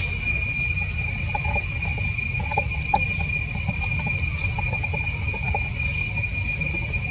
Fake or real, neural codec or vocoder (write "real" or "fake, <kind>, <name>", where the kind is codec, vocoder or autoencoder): real